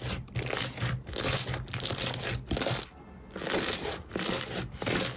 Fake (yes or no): no